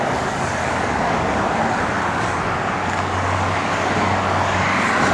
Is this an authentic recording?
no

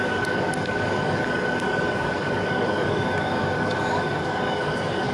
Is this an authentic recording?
no